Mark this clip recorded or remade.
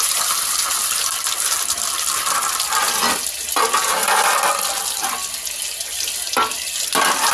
recorded